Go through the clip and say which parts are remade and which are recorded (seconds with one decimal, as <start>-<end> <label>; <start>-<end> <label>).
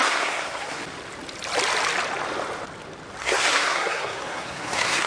0.0-0.8 remade; 0.8-3.2 recorded; 3.2-5.1 remade